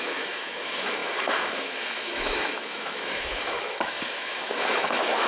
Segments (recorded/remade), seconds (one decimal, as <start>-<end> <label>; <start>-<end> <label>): 0.0-5.3 remade